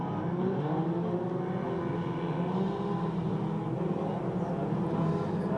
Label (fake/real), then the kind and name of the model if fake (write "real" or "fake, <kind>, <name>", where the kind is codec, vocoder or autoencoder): real